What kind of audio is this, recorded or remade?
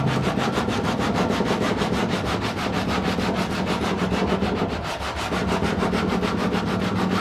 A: recorded